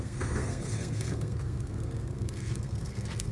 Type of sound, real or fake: fake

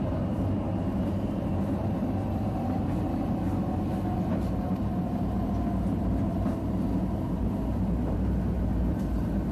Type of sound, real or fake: fake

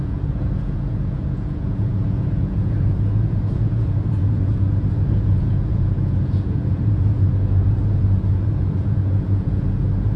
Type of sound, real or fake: fake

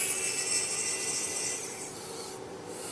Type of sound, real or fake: real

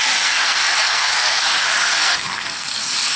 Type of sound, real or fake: fake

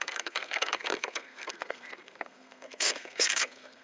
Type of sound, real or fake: fake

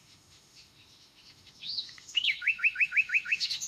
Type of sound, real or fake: fake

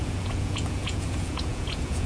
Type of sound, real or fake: fake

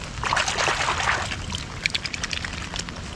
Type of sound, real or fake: real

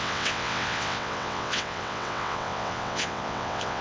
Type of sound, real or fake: fake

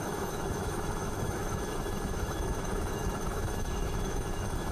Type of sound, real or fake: fake